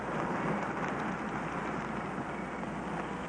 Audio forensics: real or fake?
real